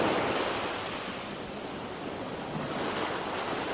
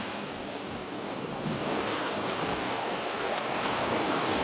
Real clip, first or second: first